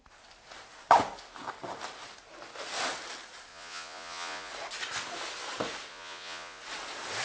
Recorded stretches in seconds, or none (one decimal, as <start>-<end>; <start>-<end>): 0.0-3.5; 4.5-5.9; 6.6-7.2